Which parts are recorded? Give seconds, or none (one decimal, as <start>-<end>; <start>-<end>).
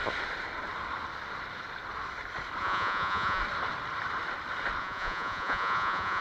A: 0.0-2.6; 3.4-4.8